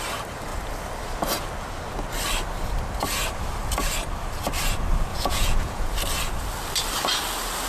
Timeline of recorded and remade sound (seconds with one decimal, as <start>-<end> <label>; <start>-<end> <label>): 0.0-5.1 recorded; 5.1-5.9 remade; 5.9-7.7 recorded